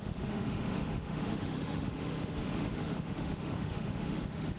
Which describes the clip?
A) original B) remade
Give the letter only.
B